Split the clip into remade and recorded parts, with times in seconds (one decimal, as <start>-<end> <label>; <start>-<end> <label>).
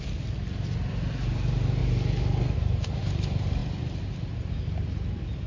0.0-5.5 recorded